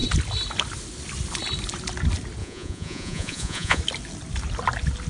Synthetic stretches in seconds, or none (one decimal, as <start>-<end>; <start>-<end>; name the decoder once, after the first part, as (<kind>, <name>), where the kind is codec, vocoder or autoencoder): 2.4-3.8 (vocoder, Vocos)